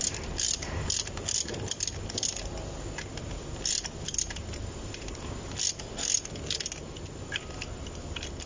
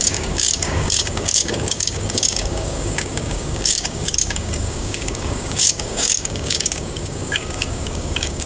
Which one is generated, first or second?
second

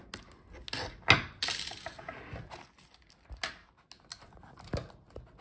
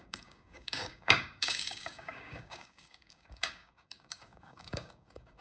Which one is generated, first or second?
second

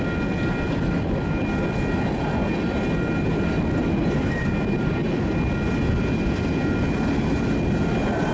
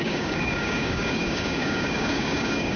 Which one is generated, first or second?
second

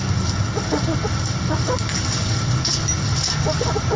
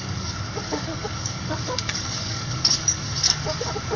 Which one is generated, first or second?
second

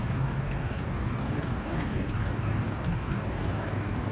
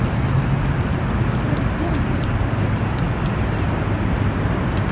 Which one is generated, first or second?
first